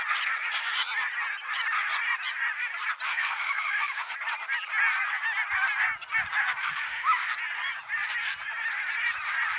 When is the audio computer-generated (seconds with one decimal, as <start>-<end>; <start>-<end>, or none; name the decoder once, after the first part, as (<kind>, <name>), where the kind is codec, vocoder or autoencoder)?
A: 3.1-4.1 (autoencoder, DAC-VAE); 6.6-7.3